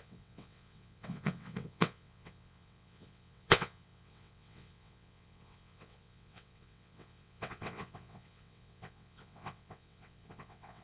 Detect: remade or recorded remade